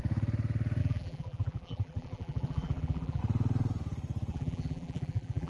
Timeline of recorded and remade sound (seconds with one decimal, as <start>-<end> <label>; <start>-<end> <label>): 0.0-0.8 recorded; 0.8-3.2 remade; 3.2-4.3 recorded; 4.3-5.5 remade